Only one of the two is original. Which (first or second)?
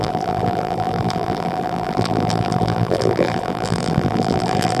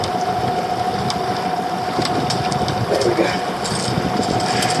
second